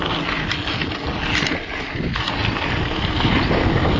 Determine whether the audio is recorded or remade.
recorded